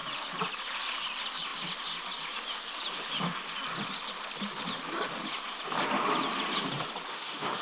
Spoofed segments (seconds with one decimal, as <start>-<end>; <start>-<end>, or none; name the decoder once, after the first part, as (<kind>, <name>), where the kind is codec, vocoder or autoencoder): 7.1-7.6 (autoencoder, DAC-VAE)